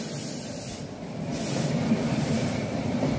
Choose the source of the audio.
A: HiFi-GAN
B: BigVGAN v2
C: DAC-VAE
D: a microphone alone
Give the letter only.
D